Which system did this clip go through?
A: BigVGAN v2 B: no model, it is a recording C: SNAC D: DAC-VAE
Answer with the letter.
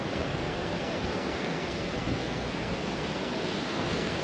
C